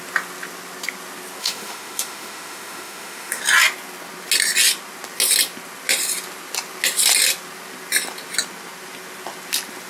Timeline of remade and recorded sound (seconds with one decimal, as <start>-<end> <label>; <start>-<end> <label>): 0.0-1.4 recorded; 1.4-3.4 remade; 3.4-9.9 recorded